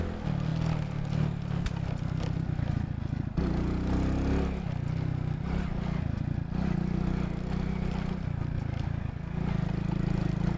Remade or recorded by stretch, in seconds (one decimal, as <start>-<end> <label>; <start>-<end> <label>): 0.0-10.6 recorded